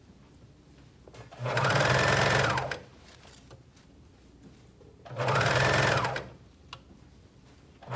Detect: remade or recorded recorded